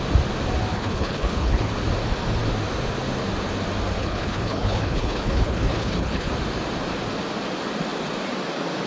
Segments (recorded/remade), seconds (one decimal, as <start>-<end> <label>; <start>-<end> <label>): 0.0-0.7 recorded; 0.7-1.7 remade; 1.7-4.0 recorded; 4.0-6.3 remade; 6.3-8.9 recorded